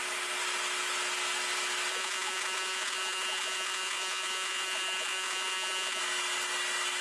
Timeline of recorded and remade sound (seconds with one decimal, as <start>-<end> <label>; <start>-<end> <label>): 0.0-1.9 recorded; 1.9-6.0 remade; 6.0-7.0 recorded